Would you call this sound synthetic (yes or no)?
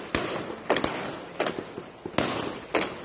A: no